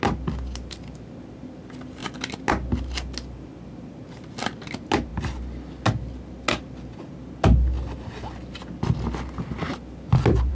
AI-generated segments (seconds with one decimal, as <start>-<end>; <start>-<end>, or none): none